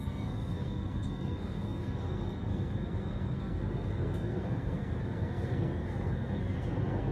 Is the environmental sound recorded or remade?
remade